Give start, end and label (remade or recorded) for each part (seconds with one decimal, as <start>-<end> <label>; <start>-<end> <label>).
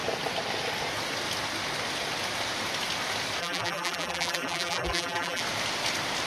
0.0-3.4 recorded; 3.4-5.4 remade; 5.4-6.3 recorded